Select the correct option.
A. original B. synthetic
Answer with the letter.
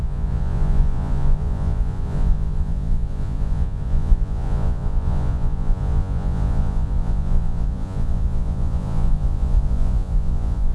B